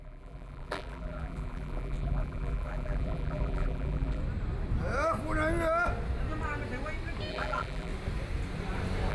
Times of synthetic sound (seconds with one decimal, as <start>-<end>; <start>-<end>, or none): 0.0-4.2; 7.3-7.9